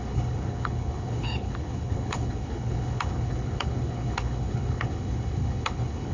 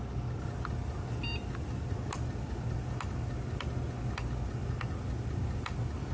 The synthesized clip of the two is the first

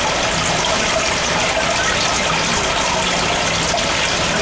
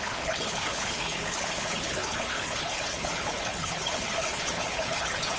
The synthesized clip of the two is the second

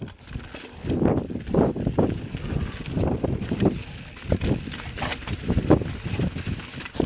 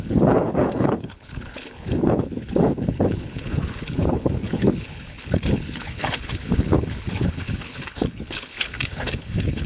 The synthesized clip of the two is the second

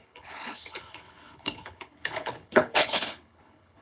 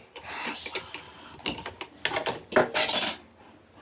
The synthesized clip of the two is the first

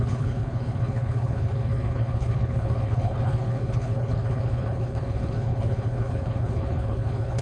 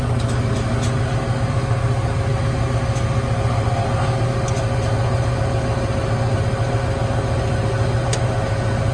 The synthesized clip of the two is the first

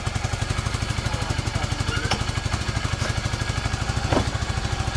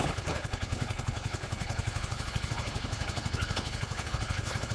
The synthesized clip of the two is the second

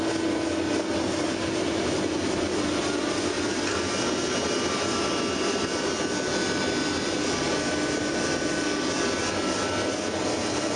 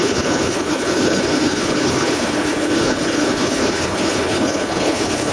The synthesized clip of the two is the second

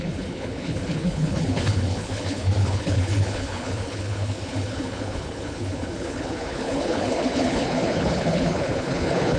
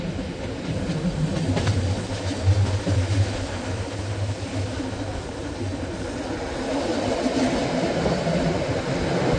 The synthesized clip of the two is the first